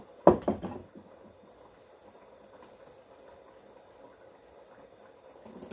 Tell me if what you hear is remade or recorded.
recorded